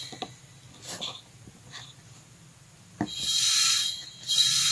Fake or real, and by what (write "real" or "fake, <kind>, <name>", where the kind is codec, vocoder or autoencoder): real